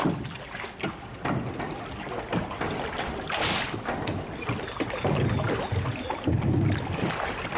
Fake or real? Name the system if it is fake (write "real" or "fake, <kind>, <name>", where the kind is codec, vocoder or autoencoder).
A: real